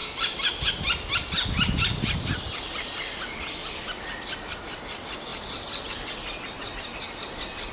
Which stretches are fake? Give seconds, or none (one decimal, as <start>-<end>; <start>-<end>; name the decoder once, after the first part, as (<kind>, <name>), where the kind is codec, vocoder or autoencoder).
none